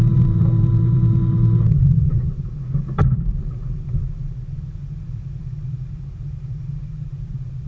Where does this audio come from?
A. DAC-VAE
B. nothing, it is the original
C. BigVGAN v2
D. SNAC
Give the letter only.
C